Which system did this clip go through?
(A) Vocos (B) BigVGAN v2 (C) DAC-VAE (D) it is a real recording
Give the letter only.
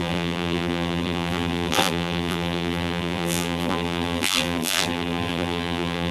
B